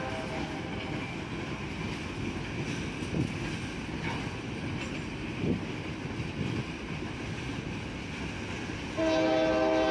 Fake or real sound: real